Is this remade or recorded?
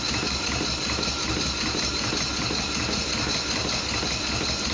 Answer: recorded